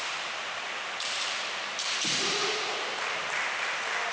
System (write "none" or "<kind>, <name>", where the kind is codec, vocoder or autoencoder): vocoder, BigVGAN v2